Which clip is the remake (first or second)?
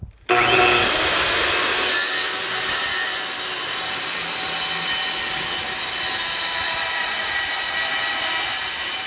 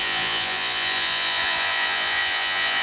second